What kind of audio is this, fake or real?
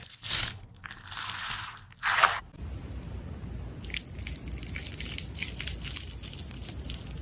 real